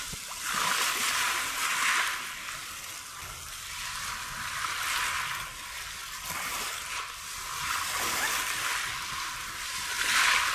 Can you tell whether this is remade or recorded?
recorded